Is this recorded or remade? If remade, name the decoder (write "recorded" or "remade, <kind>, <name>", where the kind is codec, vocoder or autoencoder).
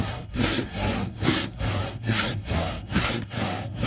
remade, codec, SNAC